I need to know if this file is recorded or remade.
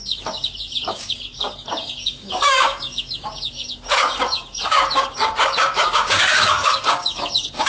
remade